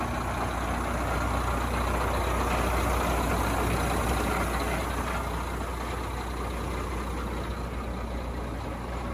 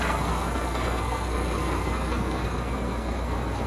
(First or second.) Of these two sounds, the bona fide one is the first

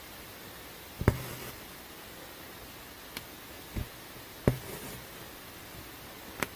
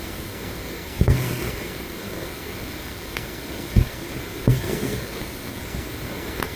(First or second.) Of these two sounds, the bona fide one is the first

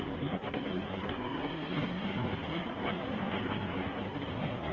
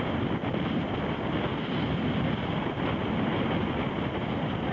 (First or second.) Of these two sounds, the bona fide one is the second